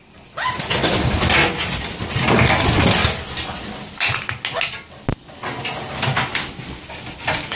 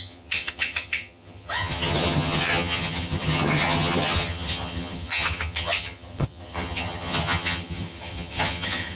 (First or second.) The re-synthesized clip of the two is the second